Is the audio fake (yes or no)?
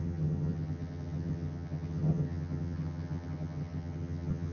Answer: yes